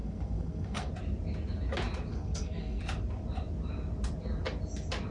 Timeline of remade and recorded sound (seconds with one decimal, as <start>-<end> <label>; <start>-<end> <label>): 0.0-0.9 remade; 0.9-2.1 recorded; 2.1-2.8 remade; 2.8-5.1 recorded